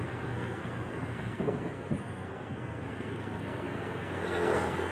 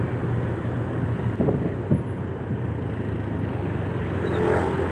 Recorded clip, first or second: second